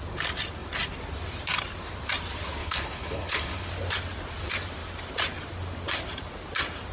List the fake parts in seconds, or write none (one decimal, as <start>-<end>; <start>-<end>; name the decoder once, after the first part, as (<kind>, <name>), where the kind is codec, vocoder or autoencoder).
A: 2.6-3.7 (codec, HILCodec)